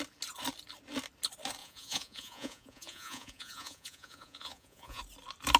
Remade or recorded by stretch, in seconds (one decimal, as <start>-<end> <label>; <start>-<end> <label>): 0.0-1.6 recorded; 1.6-5.0 remade; 5.0-5.6 recorded